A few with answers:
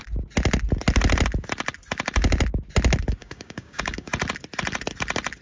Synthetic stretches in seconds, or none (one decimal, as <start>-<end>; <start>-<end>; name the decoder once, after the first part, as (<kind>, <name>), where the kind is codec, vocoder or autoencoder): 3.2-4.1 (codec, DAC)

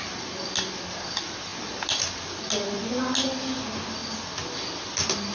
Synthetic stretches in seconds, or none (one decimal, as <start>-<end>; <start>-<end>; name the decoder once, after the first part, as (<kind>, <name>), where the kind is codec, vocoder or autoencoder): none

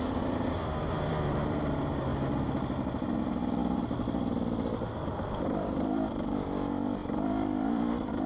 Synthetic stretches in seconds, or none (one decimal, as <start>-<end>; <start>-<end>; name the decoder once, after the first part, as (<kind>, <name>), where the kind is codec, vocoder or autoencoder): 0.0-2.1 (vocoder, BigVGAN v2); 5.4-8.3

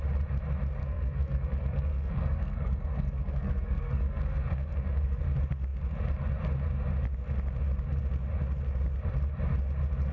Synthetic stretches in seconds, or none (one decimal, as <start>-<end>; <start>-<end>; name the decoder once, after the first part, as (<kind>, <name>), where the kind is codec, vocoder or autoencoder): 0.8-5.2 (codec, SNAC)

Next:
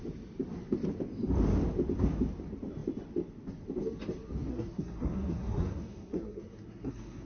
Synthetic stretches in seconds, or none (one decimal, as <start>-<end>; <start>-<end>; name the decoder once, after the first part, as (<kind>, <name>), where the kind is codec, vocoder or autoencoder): 4.5-7.3 (codec, SNAC)

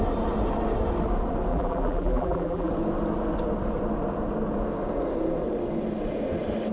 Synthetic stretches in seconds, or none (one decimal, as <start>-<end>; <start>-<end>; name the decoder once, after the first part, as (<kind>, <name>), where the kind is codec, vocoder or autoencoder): 1.5-2.7 (vocoder, BigVGAN v2)

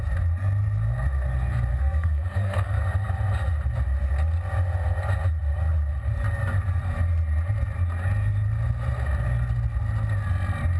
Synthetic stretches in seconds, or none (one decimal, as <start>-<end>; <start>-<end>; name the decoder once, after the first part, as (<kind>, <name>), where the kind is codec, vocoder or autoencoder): 1.7-2.8 (codec, SNAC)